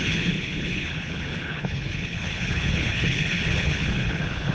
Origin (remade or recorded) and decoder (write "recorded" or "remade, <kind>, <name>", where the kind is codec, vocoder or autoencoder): remade, codec, HILCodec